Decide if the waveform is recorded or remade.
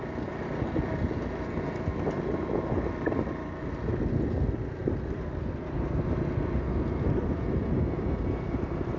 recorded